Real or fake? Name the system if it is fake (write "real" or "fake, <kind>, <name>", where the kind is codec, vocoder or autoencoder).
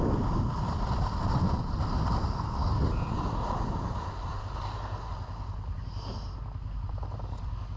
real